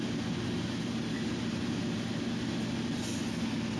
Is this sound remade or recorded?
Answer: recorded